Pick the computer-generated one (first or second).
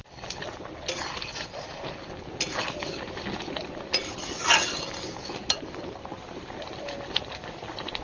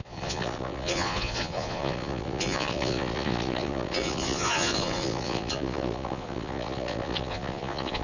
second